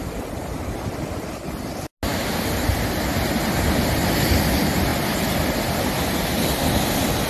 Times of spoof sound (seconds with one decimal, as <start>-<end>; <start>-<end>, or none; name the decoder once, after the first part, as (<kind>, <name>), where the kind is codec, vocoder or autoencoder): none